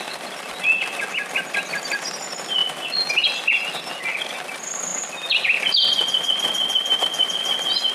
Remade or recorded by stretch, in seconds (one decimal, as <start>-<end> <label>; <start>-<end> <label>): 0.0-7.9 recorded